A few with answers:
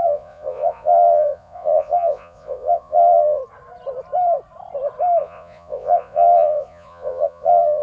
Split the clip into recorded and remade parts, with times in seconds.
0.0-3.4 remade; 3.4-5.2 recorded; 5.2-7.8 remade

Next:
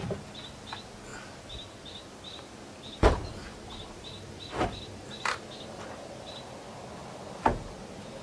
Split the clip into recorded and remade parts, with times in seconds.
0.0-8.2 recorded

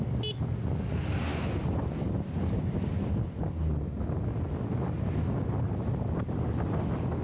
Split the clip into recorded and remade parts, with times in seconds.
0.0-7.2 recorded

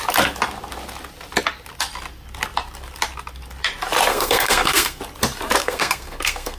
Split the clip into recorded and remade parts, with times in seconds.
0.0-4.1 recorded; 4.1-5.0 remade; 5.0-5.6 recorded; 5.6-6.6 remade

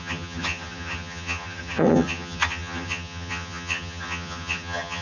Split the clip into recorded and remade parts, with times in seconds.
0.0-5.0 remade

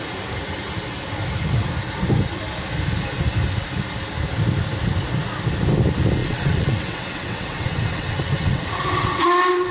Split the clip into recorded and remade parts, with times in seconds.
0.0-6.2 recorded; 6.2-9.2 remade; 9.2-9.7 recorded

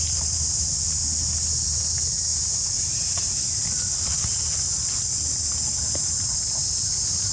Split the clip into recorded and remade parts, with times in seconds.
0.0-7.3 recorded

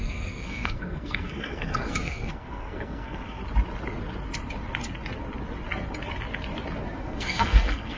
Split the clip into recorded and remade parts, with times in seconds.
0.0-3.4 remade; 3.4-7.0 recorded; 7.0-8.0 remade